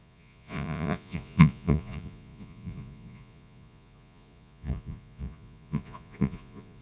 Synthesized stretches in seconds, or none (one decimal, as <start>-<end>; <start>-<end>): 0.0-6.8